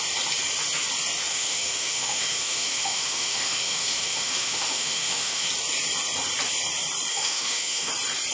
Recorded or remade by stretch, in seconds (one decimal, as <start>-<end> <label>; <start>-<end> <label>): 0.0-1.3 recorded; 1.3-5.5 remade; 5.5-7.1 recorded; 7.1-7.9 remade; 7.9-8.3 recorded